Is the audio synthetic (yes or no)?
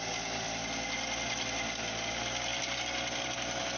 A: no